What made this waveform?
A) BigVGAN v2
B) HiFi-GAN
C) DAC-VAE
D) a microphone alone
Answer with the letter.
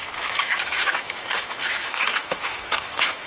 C